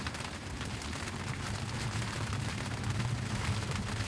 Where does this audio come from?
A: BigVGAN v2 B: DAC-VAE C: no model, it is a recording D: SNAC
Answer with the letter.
A